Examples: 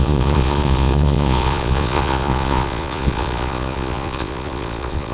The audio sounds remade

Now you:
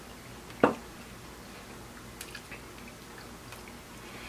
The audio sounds recorded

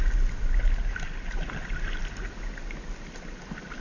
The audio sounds recorded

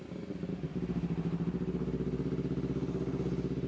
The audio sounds recorded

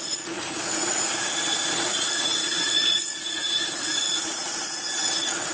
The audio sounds remade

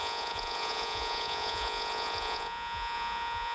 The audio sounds remade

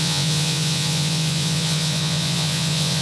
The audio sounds remade